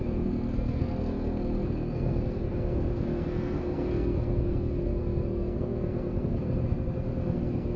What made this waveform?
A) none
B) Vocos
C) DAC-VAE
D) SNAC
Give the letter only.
D